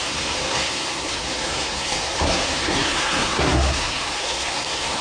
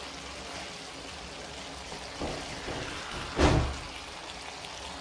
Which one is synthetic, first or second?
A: first